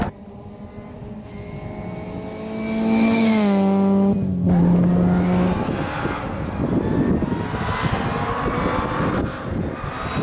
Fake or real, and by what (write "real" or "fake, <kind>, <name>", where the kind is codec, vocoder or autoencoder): real